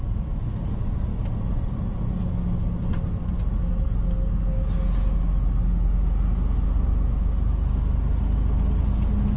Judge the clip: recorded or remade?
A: recorded